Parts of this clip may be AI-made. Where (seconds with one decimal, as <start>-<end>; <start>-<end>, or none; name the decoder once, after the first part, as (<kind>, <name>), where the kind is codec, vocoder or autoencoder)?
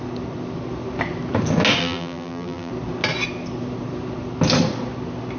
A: 1.8-2.7 (vocoder, BigVGAN v2)